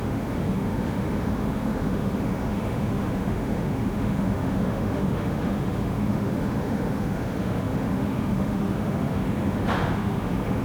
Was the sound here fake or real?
fake